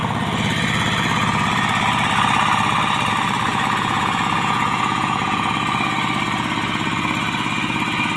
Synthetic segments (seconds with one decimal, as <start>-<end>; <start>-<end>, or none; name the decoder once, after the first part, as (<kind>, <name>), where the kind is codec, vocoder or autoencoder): 3.5-5.5 (vocoder, Vocos)